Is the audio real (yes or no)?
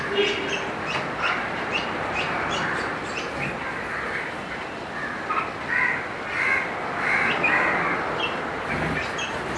yes